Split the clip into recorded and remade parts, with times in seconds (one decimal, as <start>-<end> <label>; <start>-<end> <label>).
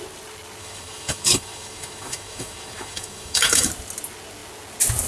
0.0-0.6 recorded; 0.6-3.7 remade; 3.7-5.1 recorded